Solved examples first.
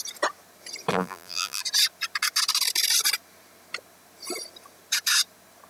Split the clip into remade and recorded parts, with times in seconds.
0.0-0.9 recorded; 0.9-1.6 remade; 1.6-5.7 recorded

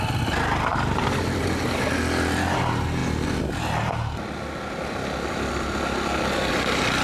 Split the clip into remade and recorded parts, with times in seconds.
0.0-0.7 recorded; 0.7-1.8 remade; 1.8-7.0 recorded

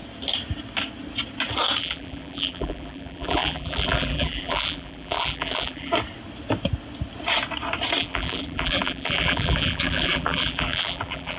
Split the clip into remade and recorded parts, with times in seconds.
0.0-1.8 recorded; 1.8-5.9 remade; 5.9-8.0 recorded; 8.0-11.4 remade

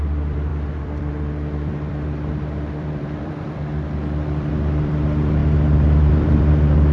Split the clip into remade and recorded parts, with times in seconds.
0.0-5.4 remade; 5.4-6.1 recorded; 6.1-6.9 remade